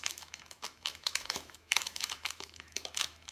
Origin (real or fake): fake